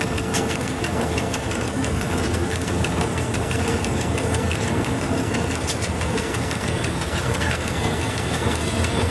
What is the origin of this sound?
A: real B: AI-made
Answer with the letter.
B